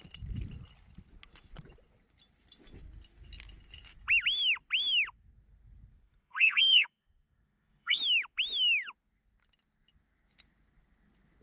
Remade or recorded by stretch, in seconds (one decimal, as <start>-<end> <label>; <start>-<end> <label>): 0.0-5.9 recorded; 5.9-8.0 remade; 8.0-11.4 recorded